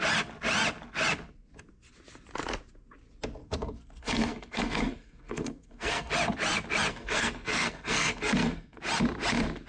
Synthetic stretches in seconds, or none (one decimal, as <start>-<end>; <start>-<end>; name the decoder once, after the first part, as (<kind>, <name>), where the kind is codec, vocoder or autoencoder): 3.4-6.1 (codec, SNAC); 6.9-8.8